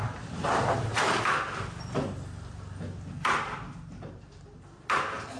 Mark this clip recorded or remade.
recorded